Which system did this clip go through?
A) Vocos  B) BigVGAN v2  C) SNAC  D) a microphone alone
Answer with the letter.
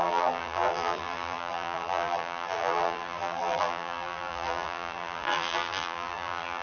B